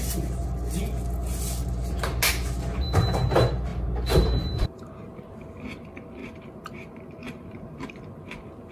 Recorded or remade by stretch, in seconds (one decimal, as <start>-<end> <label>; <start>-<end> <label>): 0.0-3.7 recorded; 3.7-4.9 remade; 4.9-6.2 recorded; 6.2-8.0 remade; 8.0-8.7 recorded